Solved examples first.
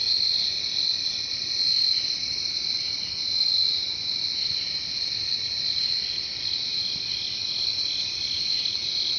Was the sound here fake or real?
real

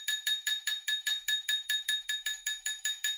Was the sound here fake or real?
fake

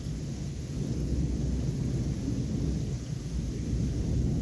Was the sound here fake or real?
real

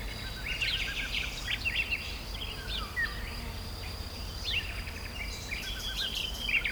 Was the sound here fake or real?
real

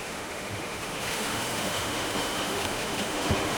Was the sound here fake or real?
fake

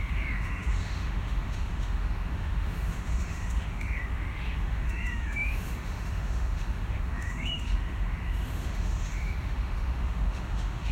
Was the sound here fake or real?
fake